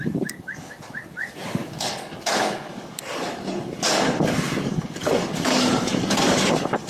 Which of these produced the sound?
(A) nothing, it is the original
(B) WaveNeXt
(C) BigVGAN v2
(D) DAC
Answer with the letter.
D